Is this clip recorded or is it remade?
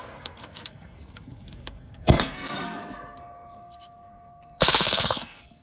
remade